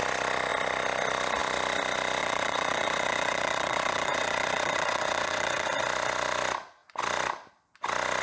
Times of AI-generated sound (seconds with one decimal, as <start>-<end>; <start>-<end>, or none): 2.2-5.8